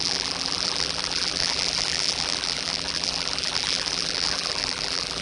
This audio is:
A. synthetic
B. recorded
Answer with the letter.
A